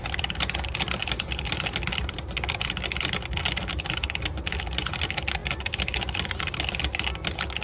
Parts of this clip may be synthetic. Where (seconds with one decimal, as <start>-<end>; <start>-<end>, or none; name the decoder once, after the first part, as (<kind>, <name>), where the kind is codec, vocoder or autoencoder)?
none